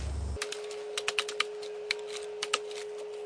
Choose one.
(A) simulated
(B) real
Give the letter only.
B